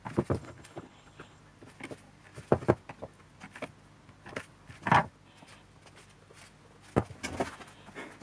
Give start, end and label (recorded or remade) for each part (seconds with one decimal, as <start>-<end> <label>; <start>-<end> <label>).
0.0-0.4 recorded; 0.4-1.4 remade; 1.4-8.2 recorded